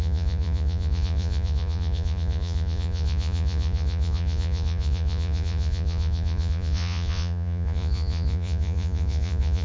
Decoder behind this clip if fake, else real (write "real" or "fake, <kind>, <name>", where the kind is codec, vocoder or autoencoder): fake, vocoder, Vocos